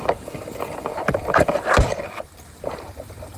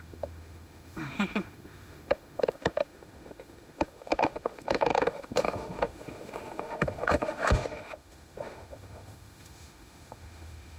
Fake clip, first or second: second